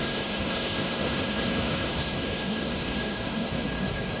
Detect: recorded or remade remade